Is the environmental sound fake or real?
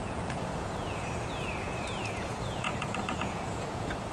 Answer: fake